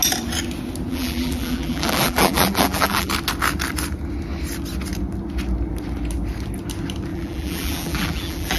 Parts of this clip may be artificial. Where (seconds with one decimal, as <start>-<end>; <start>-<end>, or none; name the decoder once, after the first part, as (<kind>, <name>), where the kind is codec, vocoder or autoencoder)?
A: 0.9-3.1 (vocoder, BigVGAN v2); 7.1-8.6